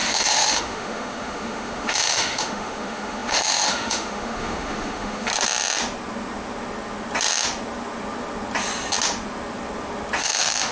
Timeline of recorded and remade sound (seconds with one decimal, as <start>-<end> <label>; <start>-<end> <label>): 0.0-5.3 remade; 5.3-10.2 recorded; 10.2-10.7 remade